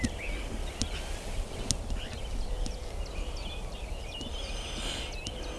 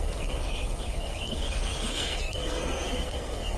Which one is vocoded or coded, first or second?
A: second